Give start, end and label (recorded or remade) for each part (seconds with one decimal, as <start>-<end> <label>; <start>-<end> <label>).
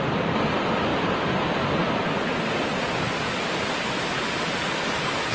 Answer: 0.0-5.3 recorded